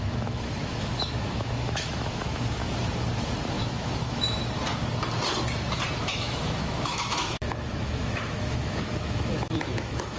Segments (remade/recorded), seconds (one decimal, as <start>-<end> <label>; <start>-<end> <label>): 0.0-2.6 remade; 2.6-3.5 recorded; 3.5-4.4 remade; 4.4-6.0 recorded; 6.0-10.2 remade